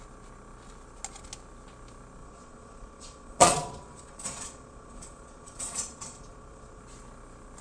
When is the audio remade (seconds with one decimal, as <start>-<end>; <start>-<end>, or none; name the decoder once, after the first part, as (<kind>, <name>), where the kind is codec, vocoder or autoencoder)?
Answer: 2.2-6.8 (vocoder, Vocos)

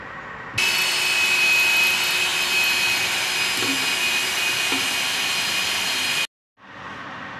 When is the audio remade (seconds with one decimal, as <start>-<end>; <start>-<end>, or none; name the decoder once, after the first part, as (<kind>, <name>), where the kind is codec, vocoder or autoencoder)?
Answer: none

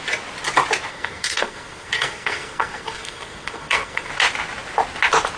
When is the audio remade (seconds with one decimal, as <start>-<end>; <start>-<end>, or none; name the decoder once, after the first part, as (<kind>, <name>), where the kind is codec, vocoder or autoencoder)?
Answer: 0.9-4.1 (codec, SNAC)

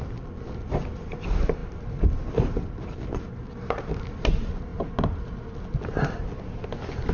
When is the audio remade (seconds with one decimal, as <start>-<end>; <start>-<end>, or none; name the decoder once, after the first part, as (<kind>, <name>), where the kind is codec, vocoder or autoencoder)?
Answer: none